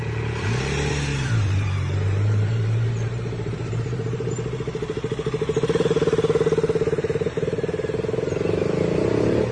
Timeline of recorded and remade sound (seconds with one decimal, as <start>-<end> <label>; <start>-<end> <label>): 0.0-1.1 recorded; 1.1-4.3 remade; 4.3-9.5 recorded